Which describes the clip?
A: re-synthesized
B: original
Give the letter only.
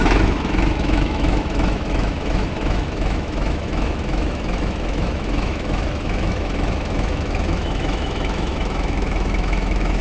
A